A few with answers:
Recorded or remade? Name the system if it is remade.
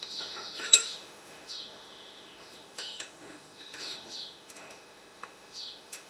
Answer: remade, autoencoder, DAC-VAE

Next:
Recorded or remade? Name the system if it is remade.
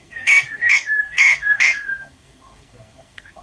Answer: remade, codec, SNAC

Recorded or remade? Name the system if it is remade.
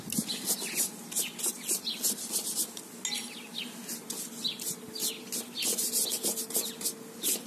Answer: recorded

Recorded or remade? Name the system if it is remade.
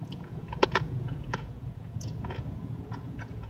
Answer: remade, vocoder, Vocos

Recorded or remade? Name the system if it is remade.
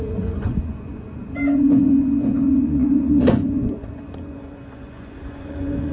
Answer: remade, vocoder, Vocos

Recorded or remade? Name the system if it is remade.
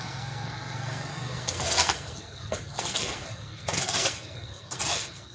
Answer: remade, codec, SNAC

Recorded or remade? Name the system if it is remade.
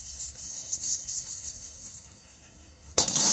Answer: remade, codec, SNAC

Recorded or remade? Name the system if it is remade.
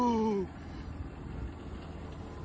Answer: recorded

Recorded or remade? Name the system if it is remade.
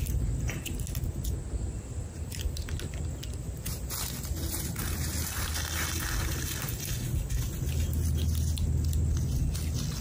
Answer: recorded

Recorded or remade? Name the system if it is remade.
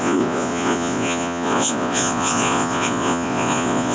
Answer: remade, vocoder, Vocos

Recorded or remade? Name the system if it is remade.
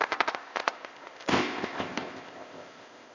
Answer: remade, codec, ZipCodec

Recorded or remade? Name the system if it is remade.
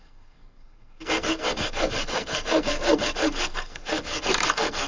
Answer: remade, codec, SNAC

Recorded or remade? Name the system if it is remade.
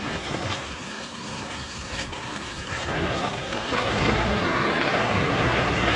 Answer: remade, codec, SNAC